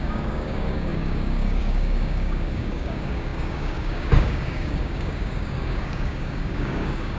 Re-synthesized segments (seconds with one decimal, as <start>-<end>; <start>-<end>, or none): 0.0-7.2

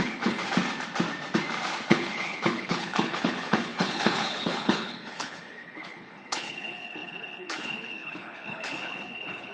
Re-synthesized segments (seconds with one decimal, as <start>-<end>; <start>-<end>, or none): 0.0-0.4; 1.9-9.5

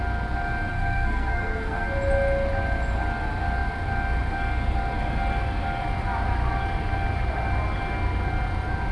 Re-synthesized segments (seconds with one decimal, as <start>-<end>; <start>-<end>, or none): 0.7-1.9